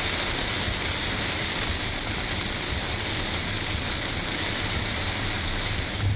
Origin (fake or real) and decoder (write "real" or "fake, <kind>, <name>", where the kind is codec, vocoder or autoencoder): real